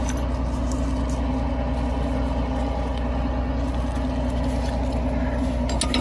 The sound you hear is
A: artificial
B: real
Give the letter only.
B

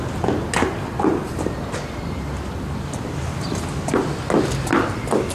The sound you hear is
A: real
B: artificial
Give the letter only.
A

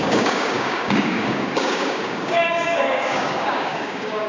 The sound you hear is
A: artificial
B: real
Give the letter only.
A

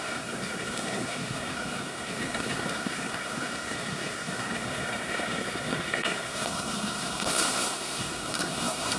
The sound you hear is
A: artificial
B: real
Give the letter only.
A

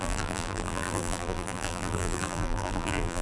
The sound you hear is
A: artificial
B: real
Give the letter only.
A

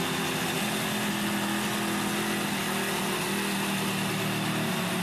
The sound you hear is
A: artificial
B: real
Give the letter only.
B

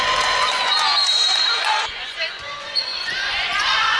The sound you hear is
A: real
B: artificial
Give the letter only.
B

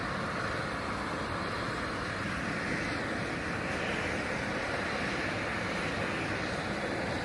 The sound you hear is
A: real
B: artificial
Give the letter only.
A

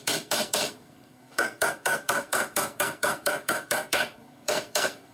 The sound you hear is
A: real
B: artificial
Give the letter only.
B